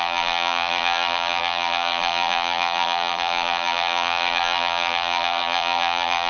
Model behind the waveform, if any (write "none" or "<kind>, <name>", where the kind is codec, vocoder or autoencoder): vocoder, BigVGAN v2